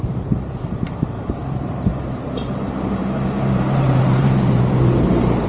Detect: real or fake fake